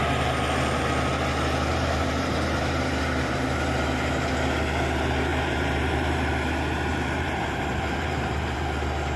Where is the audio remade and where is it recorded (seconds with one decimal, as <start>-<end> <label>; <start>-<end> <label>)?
0.0-1.7 recorded; 1.7-4.3 remade; 4.3-5.3 recorded; 5.3-6.3 remade; 6.3-6.9 recorded; 6.9-8.6 remade; 8.6-9.2 recorded